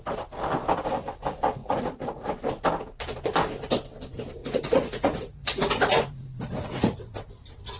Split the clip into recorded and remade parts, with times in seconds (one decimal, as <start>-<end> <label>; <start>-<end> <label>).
0.0-1.6 recorded; 1.6-2.3 remade; 2.3-4.4 recorded; 4.4-7.2 remade; 7.2-7.8 recorded